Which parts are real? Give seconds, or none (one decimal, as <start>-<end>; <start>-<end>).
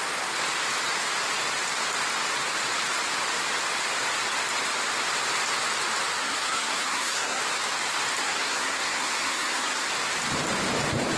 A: 0.0-6.2; 7.4-8.2; 9.9-11.2